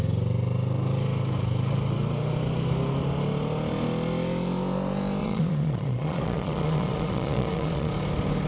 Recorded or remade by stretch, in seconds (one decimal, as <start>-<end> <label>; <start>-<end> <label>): 0.0-5.2 recorded; 5.2-7.9 remade; 7.9-8.5 recorded